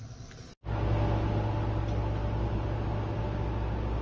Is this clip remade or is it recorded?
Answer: recorded